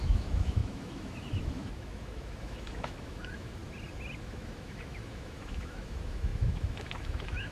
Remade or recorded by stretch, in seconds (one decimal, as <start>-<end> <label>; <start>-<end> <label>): 0.0-3.6 remade; 3.6-4.2 recorded; 4.2-7.5 remade